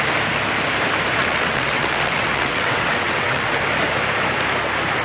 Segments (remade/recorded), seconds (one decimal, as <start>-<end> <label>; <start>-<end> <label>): 0.0-1.2 recorded; 1.2-3.6 remade; 3.6-5.0 recorded